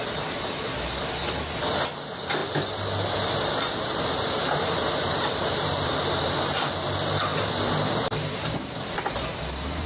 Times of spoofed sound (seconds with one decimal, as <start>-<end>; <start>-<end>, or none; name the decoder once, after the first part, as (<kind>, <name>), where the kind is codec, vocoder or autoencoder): 2.4-6.4 (vocoder, BigVGAN v2); 7.3-9.0